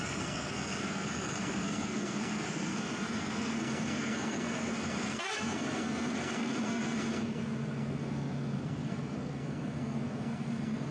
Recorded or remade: remade